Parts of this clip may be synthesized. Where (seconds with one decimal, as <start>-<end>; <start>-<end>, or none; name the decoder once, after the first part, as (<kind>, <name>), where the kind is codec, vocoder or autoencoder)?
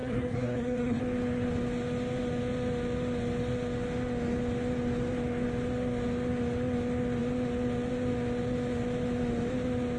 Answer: 0.0-1.0 (codec, SNAC)